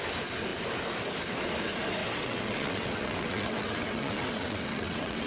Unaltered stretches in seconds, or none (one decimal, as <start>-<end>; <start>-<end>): 0.0-2.0